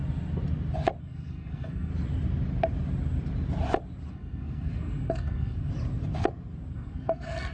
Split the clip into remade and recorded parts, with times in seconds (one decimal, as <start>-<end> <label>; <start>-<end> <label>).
0.0-1.0 recorded; 1.0-1.9 remade; 1.9-4.1 recorded; 4.1-5.7 remade; 5.7-6.7 recorded; 6.7-7.5 remade